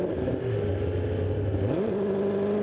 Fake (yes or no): no